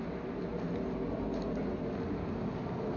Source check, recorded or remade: recorded